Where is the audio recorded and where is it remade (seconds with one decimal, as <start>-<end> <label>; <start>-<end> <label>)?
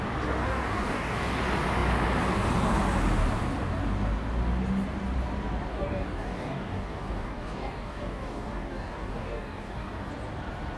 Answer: 0.0-0.4 recorded; 0.4-1.4 remade; 1.4-5.7 recorded; 5.7-10.1 remade; 10.1-10.8 recorded